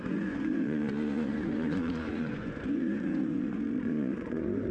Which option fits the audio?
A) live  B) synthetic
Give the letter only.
B